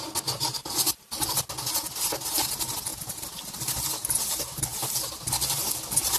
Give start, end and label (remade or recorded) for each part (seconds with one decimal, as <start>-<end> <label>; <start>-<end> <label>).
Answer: 0.0-6.2 recorded